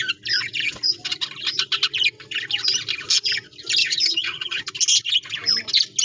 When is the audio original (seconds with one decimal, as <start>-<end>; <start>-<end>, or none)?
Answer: 0.0-3.8; 4.6-6.0